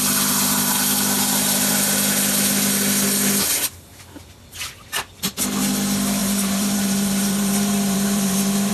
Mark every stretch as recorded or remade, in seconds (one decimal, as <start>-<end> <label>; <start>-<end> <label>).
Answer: 0.0-6.2 recorded; 6.2-8.7 remade